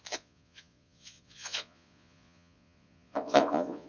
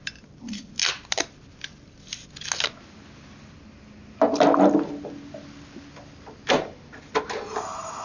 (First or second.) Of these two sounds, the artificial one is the first